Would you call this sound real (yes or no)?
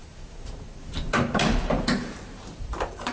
no